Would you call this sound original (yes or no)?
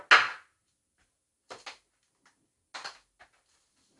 yes